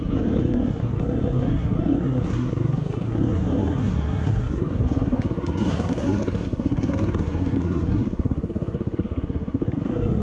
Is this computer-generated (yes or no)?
yes